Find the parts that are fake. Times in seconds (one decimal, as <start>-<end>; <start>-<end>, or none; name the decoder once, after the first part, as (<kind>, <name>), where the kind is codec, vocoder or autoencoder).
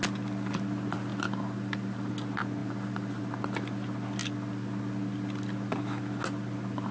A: 1.1-2.1 (vocoder, BigVGAN v2); 2.6-3.2